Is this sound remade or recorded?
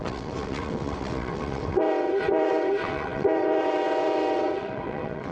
remade